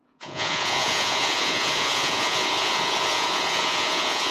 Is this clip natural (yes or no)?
no